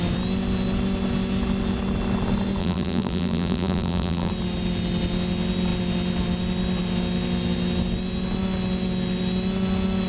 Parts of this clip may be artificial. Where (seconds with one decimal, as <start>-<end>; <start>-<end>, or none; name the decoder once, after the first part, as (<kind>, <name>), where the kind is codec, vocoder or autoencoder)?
2.6-4.3 (vocoder, BigVGAN v2)